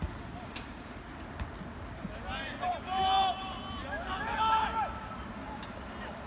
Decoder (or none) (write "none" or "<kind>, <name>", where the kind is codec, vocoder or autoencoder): none